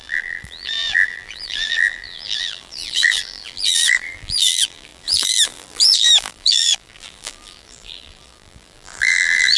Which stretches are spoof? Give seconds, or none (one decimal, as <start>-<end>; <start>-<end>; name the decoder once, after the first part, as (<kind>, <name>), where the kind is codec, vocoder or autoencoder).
0.0-9.6 (vocoder, BigVGAN v2)